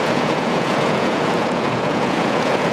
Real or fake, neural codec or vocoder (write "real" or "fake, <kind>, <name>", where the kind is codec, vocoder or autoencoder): fake, vocoder, Vocos